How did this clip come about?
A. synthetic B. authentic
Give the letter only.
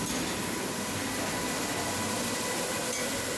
B